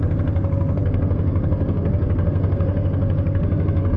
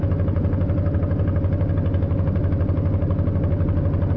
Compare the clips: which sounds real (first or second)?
second